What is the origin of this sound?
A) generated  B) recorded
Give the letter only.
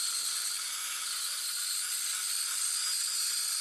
B